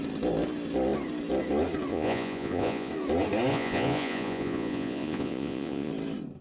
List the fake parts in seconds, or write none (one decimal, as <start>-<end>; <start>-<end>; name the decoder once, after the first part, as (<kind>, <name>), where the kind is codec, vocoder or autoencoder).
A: 1.9-2.9 (vocoder, Vocos); 3.5-5.9